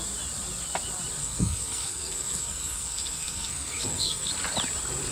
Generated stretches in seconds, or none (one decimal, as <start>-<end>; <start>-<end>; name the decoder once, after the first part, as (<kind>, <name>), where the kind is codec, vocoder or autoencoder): 1.2-4.3 (codec, SNAC)